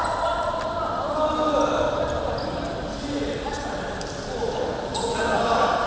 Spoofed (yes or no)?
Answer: no